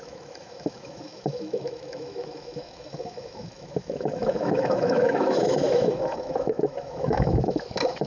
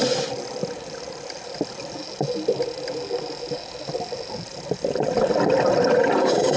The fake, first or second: first